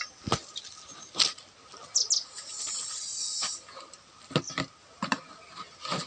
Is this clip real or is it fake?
real